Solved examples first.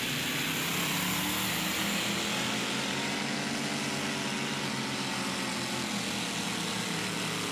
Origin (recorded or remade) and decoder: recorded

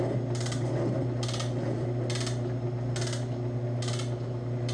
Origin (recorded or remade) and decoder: recorded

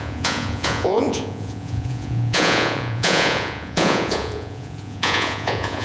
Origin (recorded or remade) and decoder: remade, vocoder, Vocos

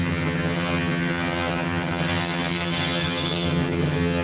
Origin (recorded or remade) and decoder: remade, vocoder, HiFi-GAN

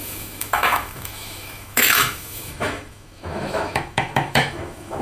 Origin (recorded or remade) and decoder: remade, autoencoder, DAC-VAE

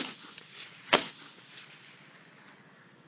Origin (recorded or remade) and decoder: remade, vocoder, Vocos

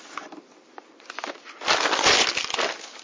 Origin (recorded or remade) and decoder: recorded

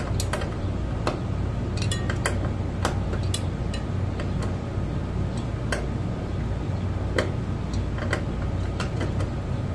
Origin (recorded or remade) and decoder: recorded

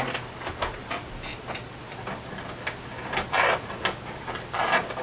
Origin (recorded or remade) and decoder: recorded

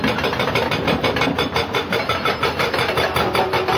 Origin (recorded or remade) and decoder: recorded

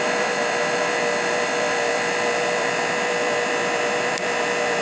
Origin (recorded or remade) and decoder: remade, vocoder, BigVGAN v2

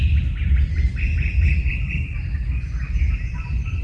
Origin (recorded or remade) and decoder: remade, vocoder, BigVGAN v2